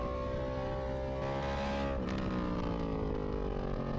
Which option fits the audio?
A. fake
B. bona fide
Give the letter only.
B